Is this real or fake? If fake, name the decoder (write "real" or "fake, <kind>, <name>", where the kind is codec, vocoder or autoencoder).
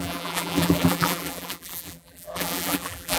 fake, vocoder, BigVGAN v2